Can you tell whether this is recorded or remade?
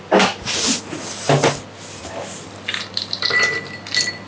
recorded